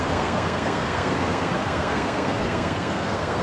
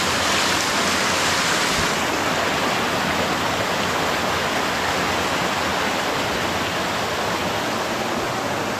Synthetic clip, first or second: first